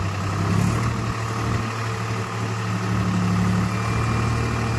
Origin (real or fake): real